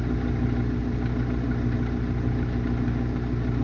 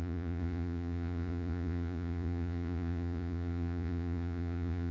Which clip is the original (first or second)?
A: first